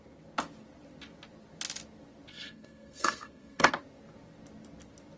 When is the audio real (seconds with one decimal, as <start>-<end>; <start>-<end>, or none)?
0.0-2.3; 3.7-5.2